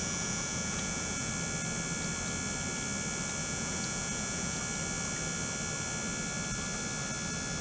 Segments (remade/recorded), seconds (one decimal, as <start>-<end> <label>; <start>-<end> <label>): 0.0-1.3 remade; 1.3-3.4 recorded; 3.4-4.6 remade; 4.6-7.6 recorded